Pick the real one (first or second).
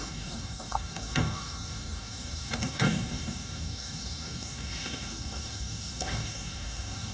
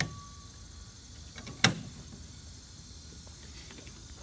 second